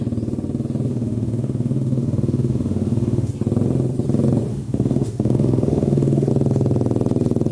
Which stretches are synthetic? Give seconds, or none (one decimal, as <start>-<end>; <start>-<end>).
0.9-3.3; 4.5-6.3